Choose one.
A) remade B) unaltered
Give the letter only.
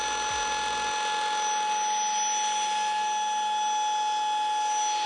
B